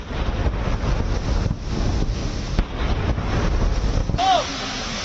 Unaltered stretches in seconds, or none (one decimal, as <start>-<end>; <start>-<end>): 0.0-5.0